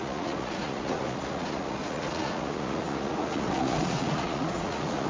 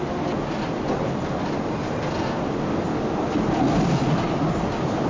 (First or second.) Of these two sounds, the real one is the second